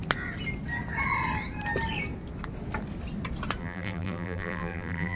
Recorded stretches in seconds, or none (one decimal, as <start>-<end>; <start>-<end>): 0.0-3.6